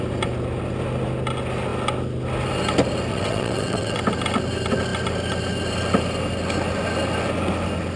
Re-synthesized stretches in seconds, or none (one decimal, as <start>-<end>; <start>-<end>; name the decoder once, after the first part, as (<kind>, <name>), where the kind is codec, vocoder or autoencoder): 3.1-4.0 (vocoder, WaveNeXt)